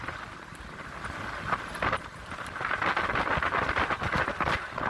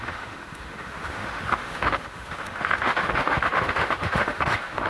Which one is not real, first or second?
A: second